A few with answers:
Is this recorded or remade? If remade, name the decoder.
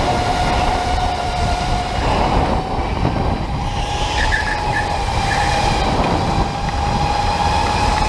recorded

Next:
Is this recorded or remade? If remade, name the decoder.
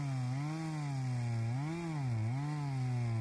recorded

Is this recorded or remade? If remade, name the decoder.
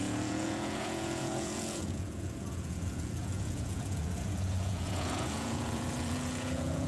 remade, vocoder, Vocos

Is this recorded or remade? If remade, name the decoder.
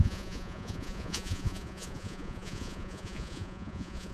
remade, vocoder, Vocos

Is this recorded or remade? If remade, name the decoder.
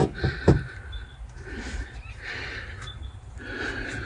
recorded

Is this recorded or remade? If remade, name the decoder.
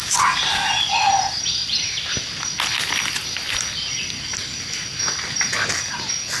recorded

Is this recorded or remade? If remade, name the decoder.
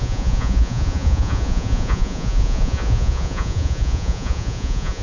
remade, vocoder, Vocos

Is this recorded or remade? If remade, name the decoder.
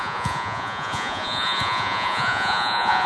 remade, vocoder, Vocos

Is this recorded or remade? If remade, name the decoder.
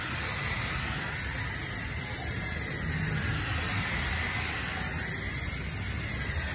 recorded